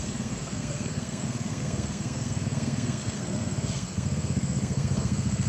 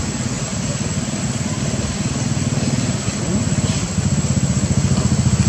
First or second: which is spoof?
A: first